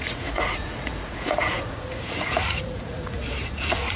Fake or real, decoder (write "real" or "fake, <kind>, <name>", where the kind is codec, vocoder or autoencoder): fake, vocoder, Vocos